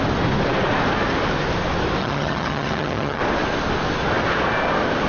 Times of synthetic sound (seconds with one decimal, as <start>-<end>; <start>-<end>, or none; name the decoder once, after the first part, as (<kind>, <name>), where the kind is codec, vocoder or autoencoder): 2.0-3.2 (vocoder, HiFi-GAN)